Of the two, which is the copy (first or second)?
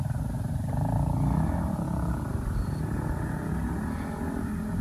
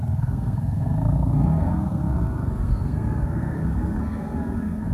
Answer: second